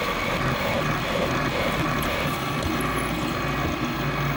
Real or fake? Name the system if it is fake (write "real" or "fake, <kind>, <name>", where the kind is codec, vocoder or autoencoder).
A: real